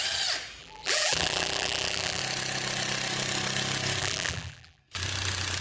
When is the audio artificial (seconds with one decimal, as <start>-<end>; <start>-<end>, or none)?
0.6-2.2; 4.0-4.8